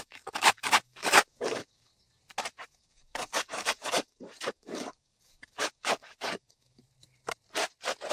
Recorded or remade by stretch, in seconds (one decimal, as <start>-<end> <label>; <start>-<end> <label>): 0.0-1.9 remade; 1.9-2.7 recorded; 2.7-6.8 remade; 6.8-8.1 recorded